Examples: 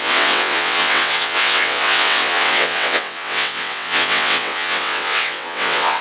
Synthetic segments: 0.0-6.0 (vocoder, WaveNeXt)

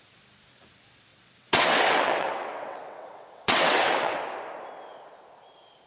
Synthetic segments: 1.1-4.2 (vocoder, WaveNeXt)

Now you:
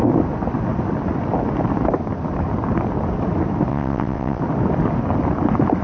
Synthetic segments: 3.7-4.4 (vocoder, WaveNeXt)

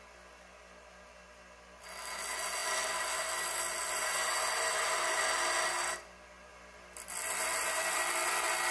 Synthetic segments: none

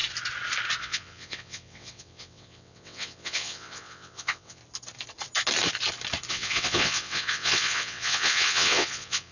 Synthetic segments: 0.8-4.6 (vocoder, WaveNeXt); 6.3-9.3

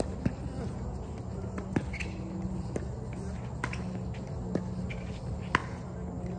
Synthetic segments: none